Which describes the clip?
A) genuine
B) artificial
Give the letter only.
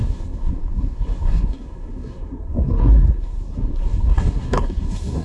B